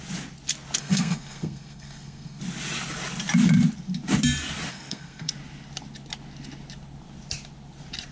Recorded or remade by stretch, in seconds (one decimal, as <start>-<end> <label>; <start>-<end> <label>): 0.0-0.8 recorded; 0.8-2.4 remade; 2.4-4.7 recorded; 4.7-5.3 remade; 5.3-8.1 recorded

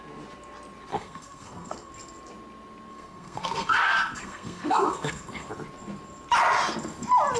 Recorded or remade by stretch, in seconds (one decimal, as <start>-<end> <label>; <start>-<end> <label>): 0.0-0.9 recorded; 0.9-1.9 remade; 1.9-2.9 recorded; 2.9-5.5 remade; 5.5-7.4 recorded

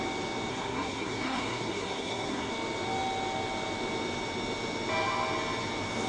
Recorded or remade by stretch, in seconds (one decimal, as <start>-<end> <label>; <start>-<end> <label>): 0.0-0.5 recorded; 0.5-2.5 remade; 2.5-6.1 recorded

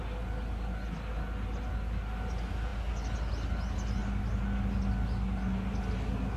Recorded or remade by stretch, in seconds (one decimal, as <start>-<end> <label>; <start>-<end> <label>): 0.0-4.0 recorded; 4.0-4.8 remade; 4.8-6.4 recorded